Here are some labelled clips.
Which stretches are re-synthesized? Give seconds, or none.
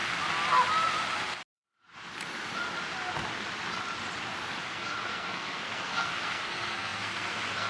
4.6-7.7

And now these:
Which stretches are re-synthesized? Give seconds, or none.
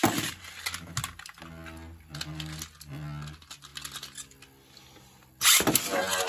none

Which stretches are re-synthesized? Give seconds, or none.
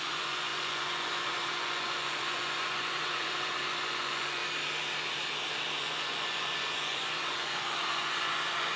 0.0-4.4; 5.8-8.8